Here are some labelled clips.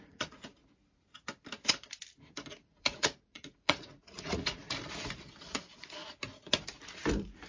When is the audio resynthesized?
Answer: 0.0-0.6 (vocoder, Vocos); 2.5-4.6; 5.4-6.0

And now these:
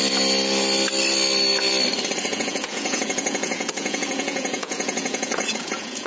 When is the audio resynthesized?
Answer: 2.3-6.1 (vocoder, Vocos)

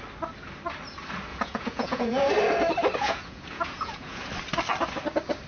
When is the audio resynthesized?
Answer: 1.3-2.3 (vocoder, Vocos); 3.0-4.3